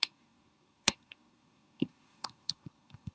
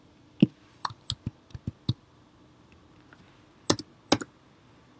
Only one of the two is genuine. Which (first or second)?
second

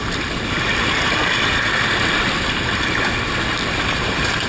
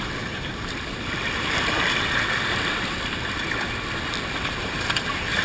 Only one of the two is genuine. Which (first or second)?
first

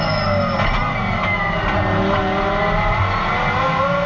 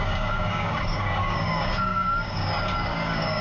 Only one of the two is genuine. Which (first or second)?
first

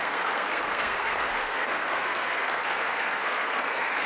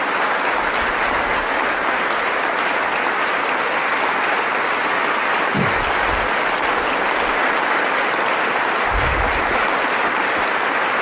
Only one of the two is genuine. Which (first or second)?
second